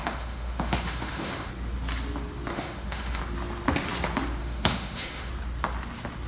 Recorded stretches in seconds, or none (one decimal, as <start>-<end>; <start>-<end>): 1.5-2.5; 3.2-4.4; 5.3-6.3

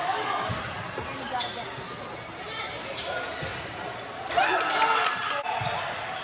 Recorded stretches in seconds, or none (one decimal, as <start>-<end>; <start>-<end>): 0.5-6.2